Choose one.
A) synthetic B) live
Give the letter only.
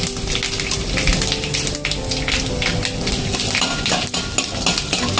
B